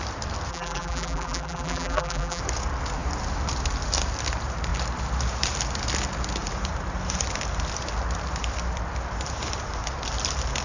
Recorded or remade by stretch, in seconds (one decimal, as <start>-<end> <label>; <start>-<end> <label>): 0.0-0.5 recorded; 0.5-2.4 remade; 2.4-10.6 recorded